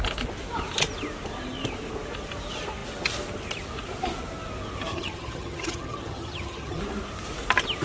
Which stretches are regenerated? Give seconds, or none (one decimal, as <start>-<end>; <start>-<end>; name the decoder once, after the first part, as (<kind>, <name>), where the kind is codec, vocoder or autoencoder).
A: 4.9-6.8 (vocoder, HiFi-GAN)